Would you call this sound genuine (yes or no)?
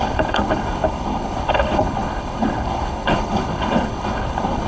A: no